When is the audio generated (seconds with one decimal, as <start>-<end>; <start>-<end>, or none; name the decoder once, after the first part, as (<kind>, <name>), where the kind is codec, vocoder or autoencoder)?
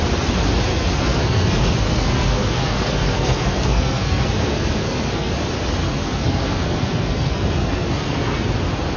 0.7-5.3 (codec, SNAC); 5.8-8.5